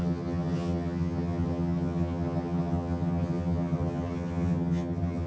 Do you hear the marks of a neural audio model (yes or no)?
yes